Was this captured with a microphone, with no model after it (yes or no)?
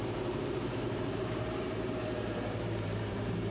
no